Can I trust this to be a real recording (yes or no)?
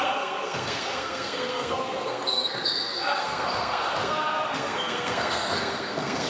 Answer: no